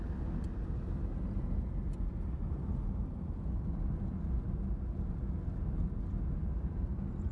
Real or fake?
real